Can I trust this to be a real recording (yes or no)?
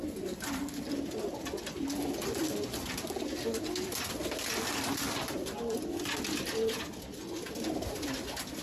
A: yes